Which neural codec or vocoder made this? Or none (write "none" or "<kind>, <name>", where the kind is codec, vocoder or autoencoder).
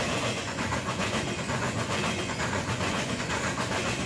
vocoder, Vocos